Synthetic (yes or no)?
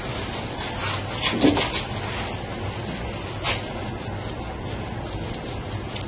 no